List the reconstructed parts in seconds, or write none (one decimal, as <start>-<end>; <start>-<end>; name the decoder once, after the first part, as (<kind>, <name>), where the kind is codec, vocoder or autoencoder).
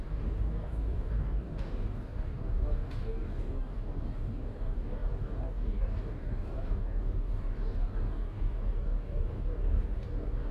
0.0-10.5 (codec, DAC)